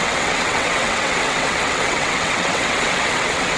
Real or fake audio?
fake